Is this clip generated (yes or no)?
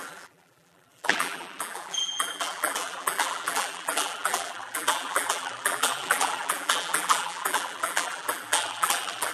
yes